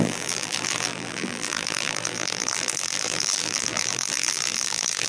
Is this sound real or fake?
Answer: fake